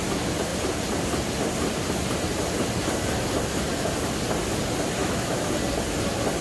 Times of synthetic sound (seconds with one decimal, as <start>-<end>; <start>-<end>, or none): 5.0-5.5